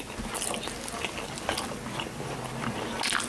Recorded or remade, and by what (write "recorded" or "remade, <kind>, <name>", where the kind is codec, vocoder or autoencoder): recorded